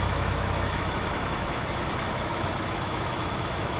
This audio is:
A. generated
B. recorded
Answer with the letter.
A